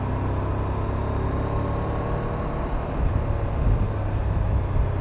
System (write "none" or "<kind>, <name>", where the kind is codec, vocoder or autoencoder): none